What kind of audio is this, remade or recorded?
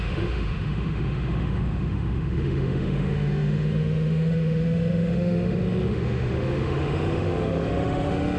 remade